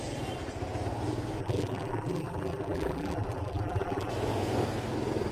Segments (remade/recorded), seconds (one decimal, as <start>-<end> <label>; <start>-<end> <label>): 0.0-1.4 recorded; 1.4-4.1 remade; 4.1-5.3 recorded